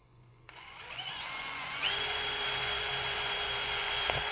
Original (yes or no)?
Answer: no